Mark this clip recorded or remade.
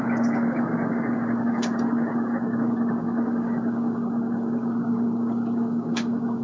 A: remade